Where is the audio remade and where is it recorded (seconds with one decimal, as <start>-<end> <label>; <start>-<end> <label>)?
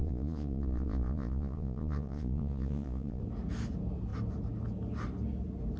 0.0-3.2 remade; 3.2-5.8 recorded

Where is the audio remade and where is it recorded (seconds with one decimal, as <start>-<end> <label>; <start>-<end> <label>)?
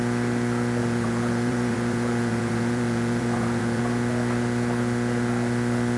0.0-0.8 recorded; 0.8-3.8 remade; 3.8-6.0 recorded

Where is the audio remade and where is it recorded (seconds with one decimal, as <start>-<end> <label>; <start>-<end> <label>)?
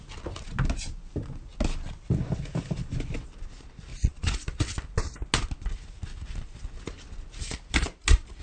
0.0-3.9 recorded; 3.9-4.6 remade; 4.6-8.4 recorded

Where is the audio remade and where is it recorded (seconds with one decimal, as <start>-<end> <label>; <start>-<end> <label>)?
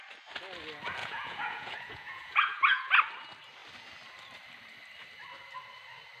0.0-1.0 recorded; 1.0-2.9 remade; 2.9-6.2 recorded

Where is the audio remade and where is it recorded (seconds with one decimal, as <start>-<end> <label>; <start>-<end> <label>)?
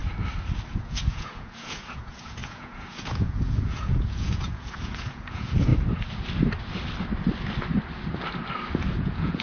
0.0-0.7 recorded; 0.7-5.7 remade; 5.7-9.0 recorded; 9.0-9.4 remade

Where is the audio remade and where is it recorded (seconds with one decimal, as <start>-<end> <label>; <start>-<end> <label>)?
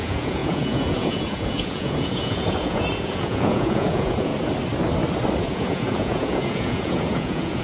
0.0-4.3 remade; 4.3-5.4 recorded; 5.4-7.6 remade